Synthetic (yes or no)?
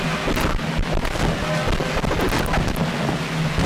no